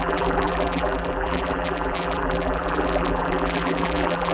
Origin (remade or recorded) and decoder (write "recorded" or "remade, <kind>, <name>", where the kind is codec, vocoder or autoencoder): remade, vocoder, BigVGAN v2